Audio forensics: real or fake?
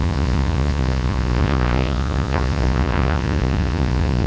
fake